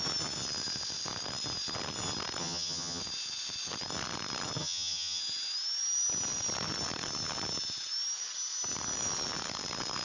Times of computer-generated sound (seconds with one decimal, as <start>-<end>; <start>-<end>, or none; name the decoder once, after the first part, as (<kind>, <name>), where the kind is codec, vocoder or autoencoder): 2.4-3.0 (vocoder, HiFi-GAN); 4.6-5.2